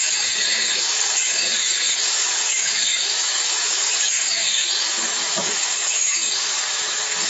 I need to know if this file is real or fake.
fake